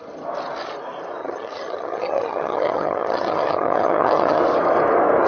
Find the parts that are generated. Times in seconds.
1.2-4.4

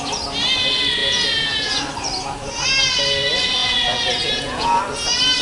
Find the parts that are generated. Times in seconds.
1.0-1.8; 3.6-4.8

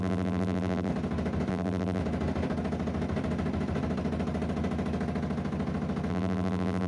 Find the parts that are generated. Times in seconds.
0.0-0.9; 1.5-2.0; 6.1-6.9

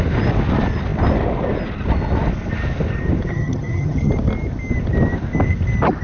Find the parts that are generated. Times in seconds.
3.3-4.1

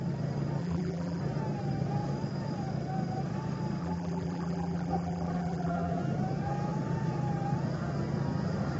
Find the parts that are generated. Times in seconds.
0.6-1.2; 3.8-6.0